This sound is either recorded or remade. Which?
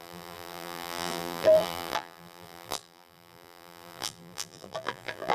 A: remade